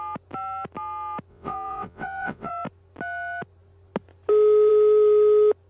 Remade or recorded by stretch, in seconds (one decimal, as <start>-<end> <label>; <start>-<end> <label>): 0.0-1.3 recorded; 1.3-2.5 remade; 2.5-5.7 recorded

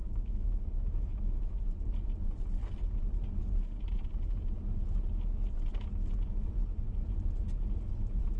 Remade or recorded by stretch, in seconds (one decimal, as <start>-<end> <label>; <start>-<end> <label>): 0.0-1.5 remade; 1.5-8.4 recorded

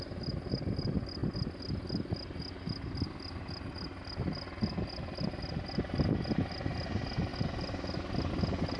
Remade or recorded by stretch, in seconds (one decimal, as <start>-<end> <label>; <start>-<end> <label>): 0.0-8.8 recorded

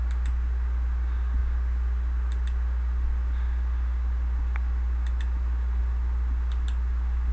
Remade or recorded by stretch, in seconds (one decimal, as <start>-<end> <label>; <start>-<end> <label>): 0.0-7.3 recorded

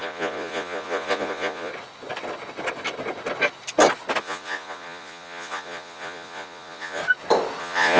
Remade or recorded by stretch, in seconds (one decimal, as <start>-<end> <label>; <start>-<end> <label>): 0.0-1.7 remade; 1.7-4.2 recorded; 4.2-7.0 remade; 7.0-7.6 recorded; 7.6-8.0 remade